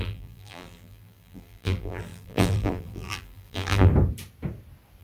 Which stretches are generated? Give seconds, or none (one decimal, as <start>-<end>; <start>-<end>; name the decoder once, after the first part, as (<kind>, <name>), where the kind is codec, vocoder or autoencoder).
0.0-3.9 (vocoder, BigVGAN v2)